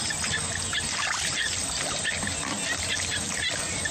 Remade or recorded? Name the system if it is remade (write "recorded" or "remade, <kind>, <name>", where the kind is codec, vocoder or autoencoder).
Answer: recorded